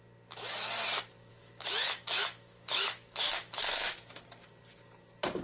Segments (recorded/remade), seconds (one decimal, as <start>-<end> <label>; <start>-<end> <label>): 0.0-1.3 recorded; 1.3-4.2 remade; 4.2-5.4 recorded